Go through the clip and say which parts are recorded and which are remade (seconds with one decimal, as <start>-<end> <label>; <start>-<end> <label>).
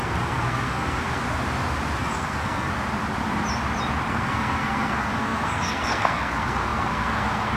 0.0-1.2 remade; 1.2-2.0 recorded; 2.0-2.7 remade; 2.7-4.1 recorded; 4.1-7.6 remade